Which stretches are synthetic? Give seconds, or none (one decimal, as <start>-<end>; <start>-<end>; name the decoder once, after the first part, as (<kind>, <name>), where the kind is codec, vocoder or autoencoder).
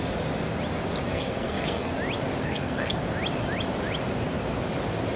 1.1-1.9 (codec, SNAC); 2.4-3.0